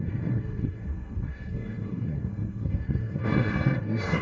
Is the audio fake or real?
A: fake